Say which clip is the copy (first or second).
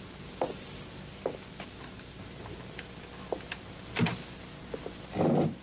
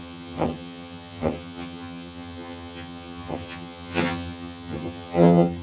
second